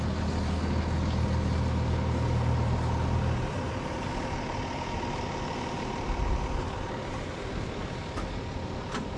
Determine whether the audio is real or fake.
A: real